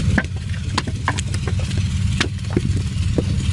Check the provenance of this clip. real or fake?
fake